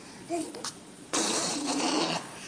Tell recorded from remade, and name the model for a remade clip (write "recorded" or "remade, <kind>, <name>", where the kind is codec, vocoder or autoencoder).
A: remade, vocoder, Vocos